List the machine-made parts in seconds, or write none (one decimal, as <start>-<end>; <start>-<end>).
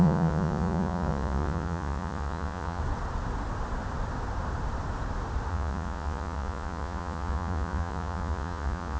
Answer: 0.0-2.8; 5.5-9.0